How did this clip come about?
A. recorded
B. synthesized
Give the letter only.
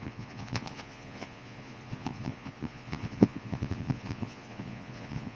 B